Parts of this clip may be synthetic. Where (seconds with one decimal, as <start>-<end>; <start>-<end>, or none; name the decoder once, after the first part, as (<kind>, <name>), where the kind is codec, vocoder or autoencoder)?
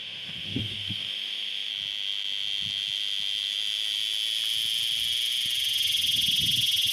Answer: 0.0-1.7 (autoencoder, DAC-VAE)